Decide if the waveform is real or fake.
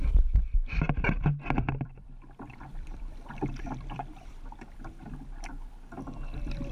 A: fake